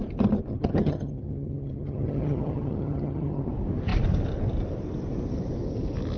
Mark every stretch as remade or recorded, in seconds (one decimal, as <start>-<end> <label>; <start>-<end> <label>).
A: 0.0-0.5 recorded; 0.5-3.5 remade; 3.5-6.2 recorded